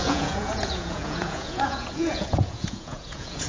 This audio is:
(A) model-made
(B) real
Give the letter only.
A